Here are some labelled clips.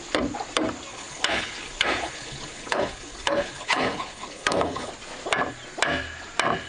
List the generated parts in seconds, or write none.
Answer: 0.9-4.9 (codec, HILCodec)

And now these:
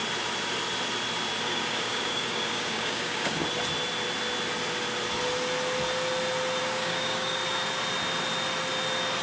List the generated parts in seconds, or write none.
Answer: 1.4-3.4 (codec, DAC); 6.6-7.4

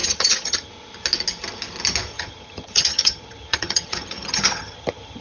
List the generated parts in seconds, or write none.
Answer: 0.0-0.7 (vocoder, HiFi-GAN); 2.1-5.2

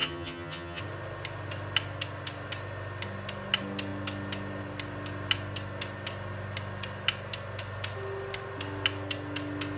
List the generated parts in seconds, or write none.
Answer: 0.0-0.8 (vocoder, HiFi-GAN)